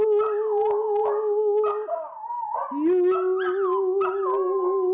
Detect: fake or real real